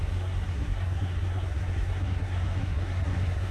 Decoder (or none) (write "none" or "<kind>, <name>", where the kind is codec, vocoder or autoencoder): codec, SNAC